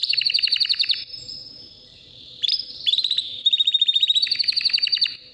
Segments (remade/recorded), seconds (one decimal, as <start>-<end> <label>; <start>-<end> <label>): 0.0-5.3 remade